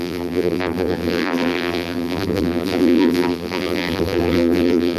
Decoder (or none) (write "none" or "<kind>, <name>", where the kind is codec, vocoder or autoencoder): vocoder, BigVGAN v2